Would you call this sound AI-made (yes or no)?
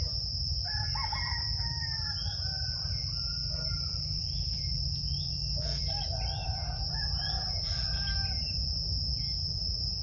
yes